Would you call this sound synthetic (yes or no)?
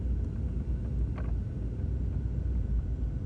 no